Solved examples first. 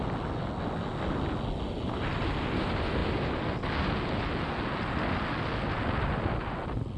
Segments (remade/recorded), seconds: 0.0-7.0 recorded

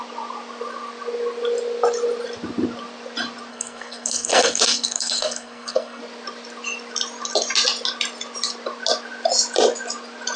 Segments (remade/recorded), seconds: 0.0-3.5 recorded; 3.5-6.0 remade; 6.0-10.4 recorded